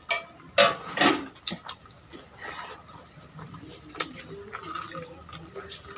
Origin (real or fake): real